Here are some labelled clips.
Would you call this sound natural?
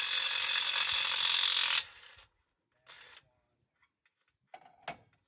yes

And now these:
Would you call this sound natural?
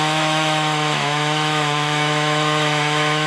no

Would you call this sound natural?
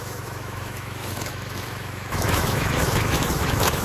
no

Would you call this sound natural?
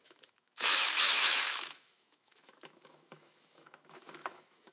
no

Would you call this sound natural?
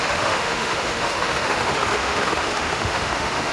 no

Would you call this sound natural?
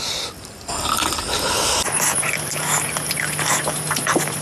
yes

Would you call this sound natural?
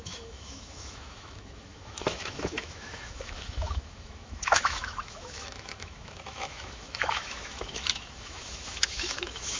no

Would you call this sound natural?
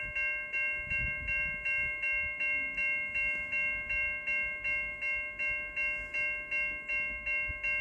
yes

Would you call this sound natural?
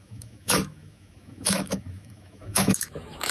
no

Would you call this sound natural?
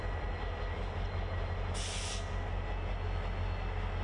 yes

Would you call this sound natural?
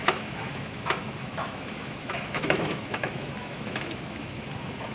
no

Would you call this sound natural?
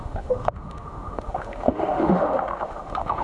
no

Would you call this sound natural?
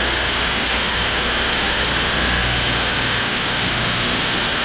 no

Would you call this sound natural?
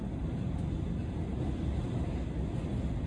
yes